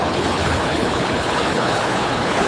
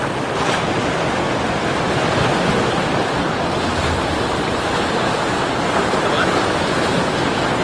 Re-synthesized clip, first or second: first